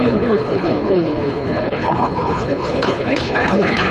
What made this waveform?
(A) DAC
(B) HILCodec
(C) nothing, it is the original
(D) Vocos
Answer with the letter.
B